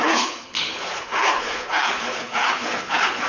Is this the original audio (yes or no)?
no